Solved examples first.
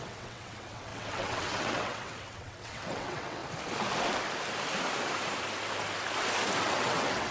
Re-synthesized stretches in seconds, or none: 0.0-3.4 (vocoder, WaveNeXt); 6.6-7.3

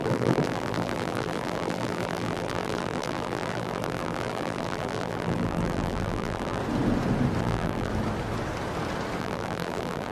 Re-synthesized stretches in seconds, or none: 0.0-6.6 (vocoder, BigVGAN v2); 7.4-7.9; 9.2-10.1